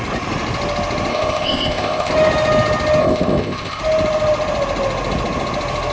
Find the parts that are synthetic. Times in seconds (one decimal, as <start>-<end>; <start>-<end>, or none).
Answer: 1.1-2.1; 3.0-3.8